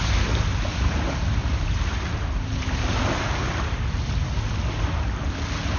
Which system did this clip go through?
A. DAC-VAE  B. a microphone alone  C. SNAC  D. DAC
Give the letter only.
B